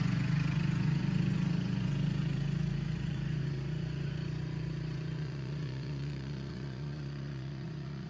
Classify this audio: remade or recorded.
remade